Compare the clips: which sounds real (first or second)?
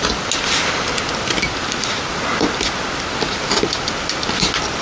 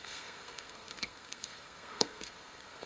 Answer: first